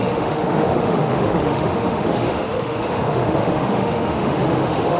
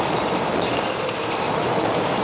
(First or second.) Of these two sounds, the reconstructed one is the first